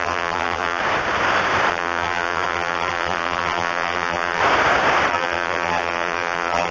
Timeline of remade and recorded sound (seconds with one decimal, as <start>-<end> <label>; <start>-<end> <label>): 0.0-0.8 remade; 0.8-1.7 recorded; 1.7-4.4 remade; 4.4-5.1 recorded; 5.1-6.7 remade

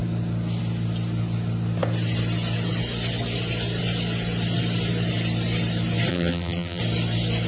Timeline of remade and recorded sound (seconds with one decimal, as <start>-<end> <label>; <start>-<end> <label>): 0.0-6.1 recorded; 6.1-6.8 remade; 6.8-7.5 recorded

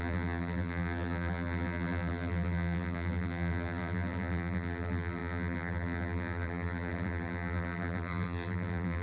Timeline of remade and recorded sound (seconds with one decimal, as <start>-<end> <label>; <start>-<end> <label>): 0.0-9.0 remade

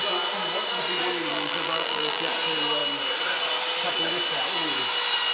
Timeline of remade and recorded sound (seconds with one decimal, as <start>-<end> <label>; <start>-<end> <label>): 0.0-1.3 recorded; 1.3-2.3 remade; 2.3-5.3 recorded

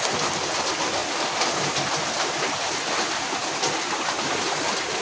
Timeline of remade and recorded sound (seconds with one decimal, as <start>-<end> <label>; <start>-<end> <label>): 0.0-5.0 recorded

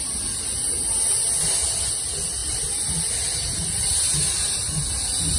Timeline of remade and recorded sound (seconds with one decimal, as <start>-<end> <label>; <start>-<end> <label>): 0.0-2.4 recorded; 2.4-5.4 remade

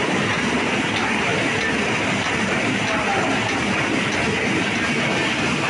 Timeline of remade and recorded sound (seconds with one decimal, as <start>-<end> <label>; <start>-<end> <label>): 0.0-1.3 recorded; 1.3-3.0 remade; 3.0-5.7 recorded